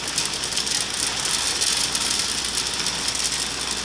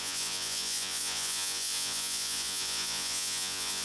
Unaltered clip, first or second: first